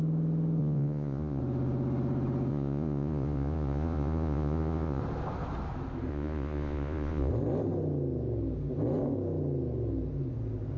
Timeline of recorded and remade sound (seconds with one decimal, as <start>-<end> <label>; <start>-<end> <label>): 0.0-0.6 recorded; 0.6-1.4 remade; 1.4-2.5 recorded; 2.5-5.0 remade; 5.0-6.1 recorded; 6.1-7.3 remade; 7.3-10.8 recorded